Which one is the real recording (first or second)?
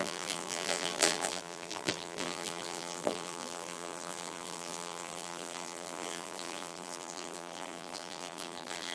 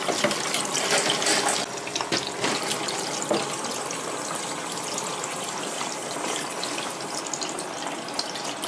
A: second